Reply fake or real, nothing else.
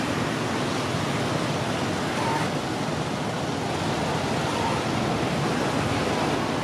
real